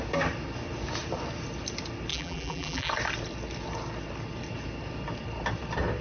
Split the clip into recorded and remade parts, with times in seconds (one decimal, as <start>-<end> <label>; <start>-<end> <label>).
0.0-2.1 recorded; 2.1-2.9 remade; 2.9-6.0 recorded